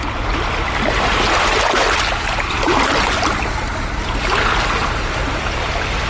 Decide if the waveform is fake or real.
real